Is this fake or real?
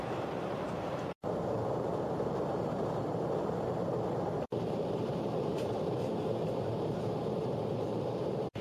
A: fake